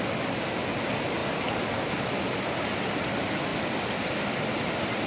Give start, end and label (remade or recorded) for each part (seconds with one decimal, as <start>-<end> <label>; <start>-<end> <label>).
0.0-5.1 recorded